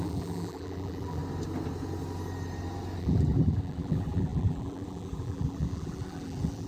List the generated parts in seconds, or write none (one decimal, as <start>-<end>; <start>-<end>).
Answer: 0.0-1.2; 3.0-6.7

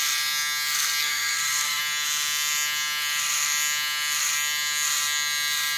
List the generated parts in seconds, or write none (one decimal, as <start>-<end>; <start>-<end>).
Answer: 1.0-1.8

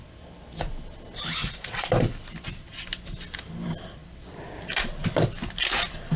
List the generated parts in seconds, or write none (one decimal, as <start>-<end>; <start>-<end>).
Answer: 1.4-1.9

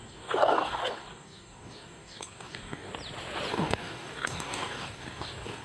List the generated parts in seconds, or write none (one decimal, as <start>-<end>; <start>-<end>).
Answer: 0.0-2.9; 3.5-5.6

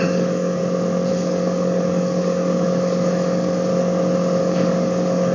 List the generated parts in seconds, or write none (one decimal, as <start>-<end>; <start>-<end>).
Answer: 0.0-0.6; 1.1-3.7; 4.4-5.3

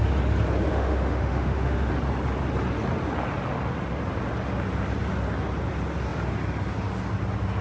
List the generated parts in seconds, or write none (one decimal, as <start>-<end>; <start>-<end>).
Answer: 0.7-1.9